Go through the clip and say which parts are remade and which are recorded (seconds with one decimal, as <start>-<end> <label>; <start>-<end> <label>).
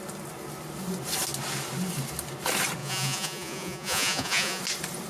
0.0-2.8 recorded; 2.8-4.6 remade; 4.6-5.1 recorded